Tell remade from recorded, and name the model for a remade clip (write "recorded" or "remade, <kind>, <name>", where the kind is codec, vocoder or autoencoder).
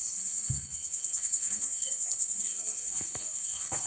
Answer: remade, codec, SNAC